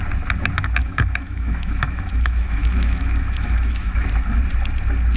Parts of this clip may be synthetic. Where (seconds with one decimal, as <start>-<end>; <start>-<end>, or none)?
0.8-3.9